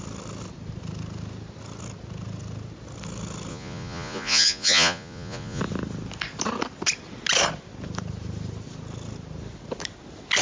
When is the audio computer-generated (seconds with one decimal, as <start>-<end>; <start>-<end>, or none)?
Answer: 3.5-5.6